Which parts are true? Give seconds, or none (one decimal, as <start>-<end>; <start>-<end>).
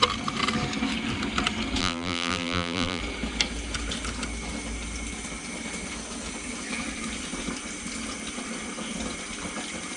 0.0-1.8; 3.0-10.0